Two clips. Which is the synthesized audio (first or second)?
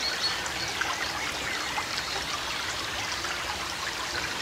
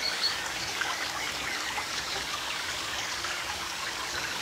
second